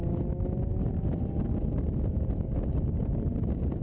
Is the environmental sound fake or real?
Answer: real